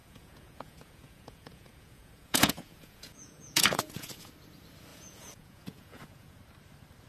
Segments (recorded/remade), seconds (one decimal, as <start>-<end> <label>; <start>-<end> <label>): 0.0-4.3 remade; 4.3-4.9 recorded; 4.9-6.4 remade; 6.4-7.1 recorded